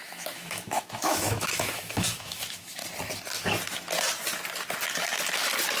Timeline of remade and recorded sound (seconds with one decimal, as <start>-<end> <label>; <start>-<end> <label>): 0.0-2.8 remade; 2.8-5.8 recorded